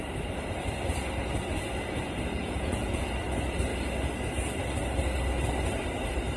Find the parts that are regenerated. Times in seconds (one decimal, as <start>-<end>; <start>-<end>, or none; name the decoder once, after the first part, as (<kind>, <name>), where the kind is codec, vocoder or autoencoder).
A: 2.3-3.1 (vocoder, Vocos)